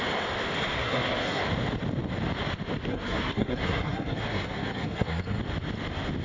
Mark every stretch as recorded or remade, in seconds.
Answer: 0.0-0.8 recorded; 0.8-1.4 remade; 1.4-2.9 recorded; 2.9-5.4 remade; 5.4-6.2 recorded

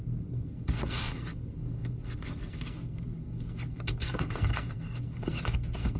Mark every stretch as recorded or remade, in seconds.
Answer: 0.0-6.0 remade

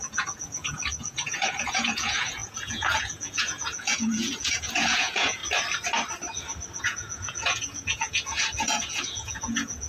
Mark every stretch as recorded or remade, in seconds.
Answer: 0.0-5.4 remade; 5.4-6.8 recorded; 6.8-9.9 remade

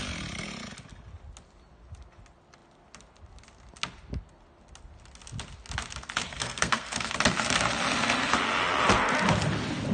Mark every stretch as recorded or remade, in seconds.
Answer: 0.0-6.3 recorded; 6.3-7.1 remade; 7.1-9.9 recorded

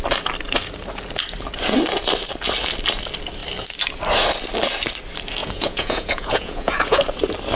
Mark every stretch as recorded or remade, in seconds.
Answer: 0.0-5.4 recorded; 5.4-7.0 remade; 7.0-7.6 recorded

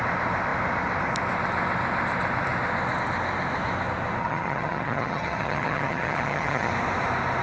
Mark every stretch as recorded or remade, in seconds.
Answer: 0.0-4.2 recorded; 4.2-6.7 remade; 6.7-7.4 recorded

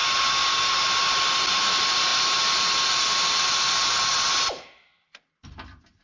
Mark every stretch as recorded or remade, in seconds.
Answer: 0.0-6.0 recorded

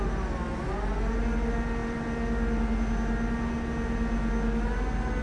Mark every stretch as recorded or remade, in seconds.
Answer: 0.0-5.2 recorded